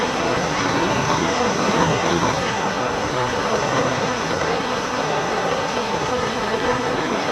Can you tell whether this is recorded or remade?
remade